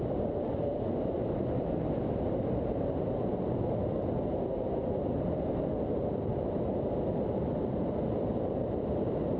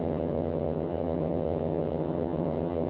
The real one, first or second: first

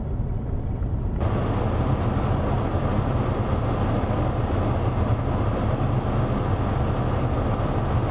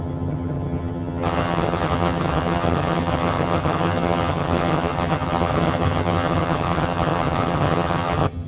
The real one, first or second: first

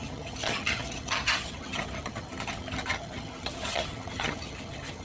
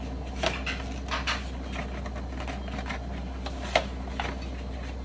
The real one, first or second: second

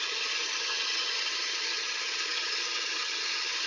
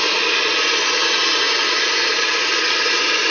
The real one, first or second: second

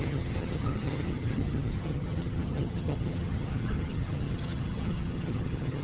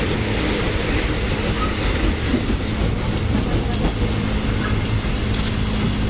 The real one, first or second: second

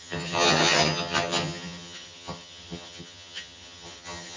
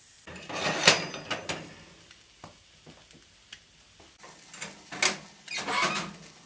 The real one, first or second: second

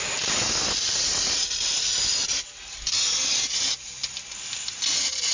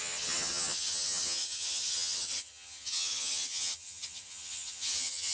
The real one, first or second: first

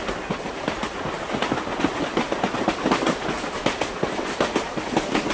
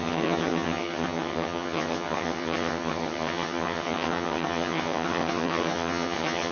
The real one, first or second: first